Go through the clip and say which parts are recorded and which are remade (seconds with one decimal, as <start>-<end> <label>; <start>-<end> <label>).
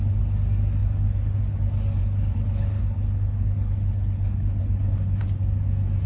0.0-2.0 recorded; 2.0-5.2 remade; 5.2-6.1 recorded